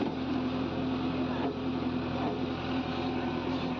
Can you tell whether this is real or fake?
real